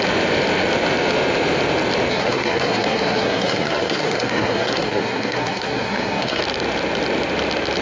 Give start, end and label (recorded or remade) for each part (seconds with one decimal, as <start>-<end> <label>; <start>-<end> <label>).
0.0-2.1 recorded; 2.1-6.4 remade; 6.4-7.8 recorded